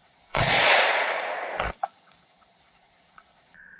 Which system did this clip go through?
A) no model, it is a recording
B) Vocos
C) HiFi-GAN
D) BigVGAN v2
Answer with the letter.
B